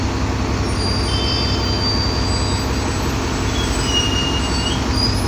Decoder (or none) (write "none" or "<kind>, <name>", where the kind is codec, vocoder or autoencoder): none